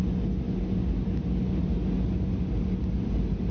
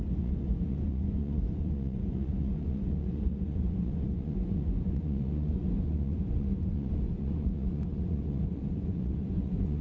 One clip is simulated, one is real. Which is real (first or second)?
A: first